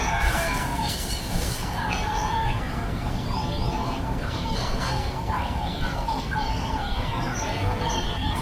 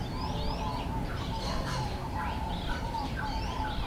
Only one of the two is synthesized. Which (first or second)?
first